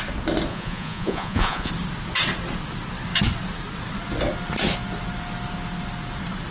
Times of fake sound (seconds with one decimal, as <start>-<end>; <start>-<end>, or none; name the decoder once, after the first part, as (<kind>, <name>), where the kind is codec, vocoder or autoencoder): 0.5-1.7 (vocoder, Vocos)